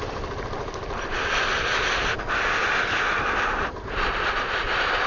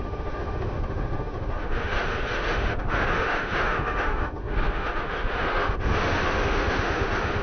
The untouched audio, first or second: first